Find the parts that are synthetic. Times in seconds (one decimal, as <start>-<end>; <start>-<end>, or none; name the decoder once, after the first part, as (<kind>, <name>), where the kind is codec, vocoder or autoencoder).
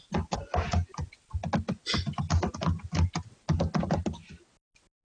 none